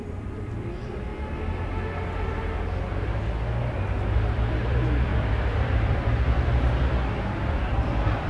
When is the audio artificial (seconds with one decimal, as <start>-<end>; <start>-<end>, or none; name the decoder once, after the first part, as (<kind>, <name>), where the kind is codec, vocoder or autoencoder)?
0.0-1.1 (vocoder, BigVGAN v2); 4.1-8.3